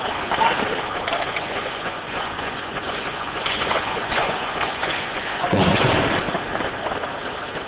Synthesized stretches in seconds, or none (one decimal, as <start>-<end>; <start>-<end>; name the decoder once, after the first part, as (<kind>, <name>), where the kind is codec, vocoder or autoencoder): 1.4-5.9 (vocoder, Vocos)